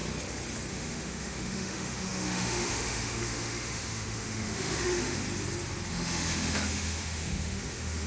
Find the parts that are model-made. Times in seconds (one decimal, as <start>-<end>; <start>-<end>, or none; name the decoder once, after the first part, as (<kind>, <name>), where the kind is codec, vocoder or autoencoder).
0.7-5.2 (autoencoder, DAC-VAE); 5.9-8.1